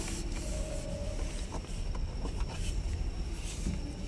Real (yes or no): yes